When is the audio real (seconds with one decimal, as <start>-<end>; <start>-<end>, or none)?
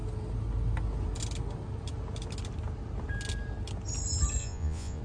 0.0-4.4